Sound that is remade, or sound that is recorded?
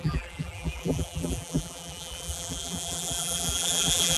remade